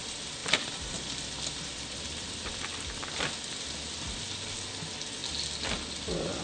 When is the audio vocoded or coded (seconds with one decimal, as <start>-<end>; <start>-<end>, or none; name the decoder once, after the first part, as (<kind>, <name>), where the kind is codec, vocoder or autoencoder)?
0.4-4.2 (vocoder, BigVGAN v2)

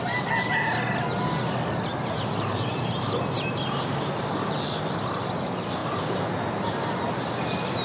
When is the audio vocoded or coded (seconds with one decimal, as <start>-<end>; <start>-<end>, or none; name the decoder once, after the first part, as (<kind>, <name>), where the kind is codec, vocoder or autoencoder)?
1.9-4.3 (vocoder, BigVGAN v2)

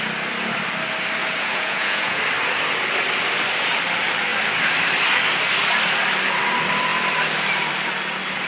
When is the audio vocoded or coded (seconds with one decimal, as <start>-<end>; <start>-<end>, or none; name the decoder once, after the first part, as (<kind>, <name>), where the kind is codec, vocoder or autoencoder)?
1.2-2.2 (vocoder, Vocos)